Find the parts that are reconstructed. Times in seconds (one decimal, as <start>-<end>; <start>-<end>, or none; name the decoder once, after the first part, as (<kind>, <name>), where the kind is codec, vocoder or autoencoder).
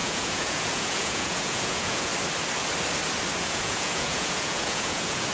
0.0-2.1 (vocoder, Vocos); 3.4-5.3